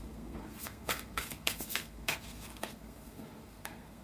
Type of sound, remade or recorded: remade